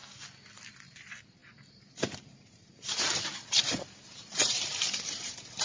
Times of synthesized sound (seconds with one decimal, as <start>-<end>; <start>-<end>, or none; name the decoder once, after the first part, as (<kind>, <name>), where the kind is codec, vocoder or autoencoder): 0.7-5.6 (vocoder, BigVGAN v2)